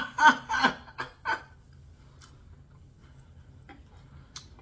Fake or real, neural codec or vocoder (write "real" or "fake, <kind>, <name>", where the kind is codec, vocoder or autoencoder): real